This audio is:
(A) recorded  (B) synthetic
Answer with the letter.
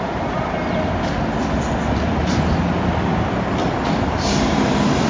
A